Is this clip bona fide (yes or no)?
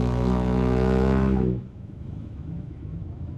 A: no